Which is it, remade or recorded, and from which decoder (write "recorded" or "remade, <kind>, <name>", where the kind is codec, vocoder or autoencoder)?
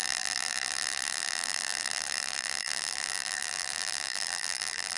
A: remade, vocoder, BigVGAN v2